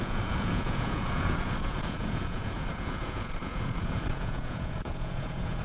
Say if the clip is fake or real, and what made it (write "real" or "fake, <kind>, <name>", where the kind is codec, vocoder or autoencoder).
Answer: fake, vocoder, Vocos